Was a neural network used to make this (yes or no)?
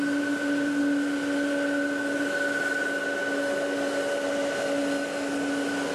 no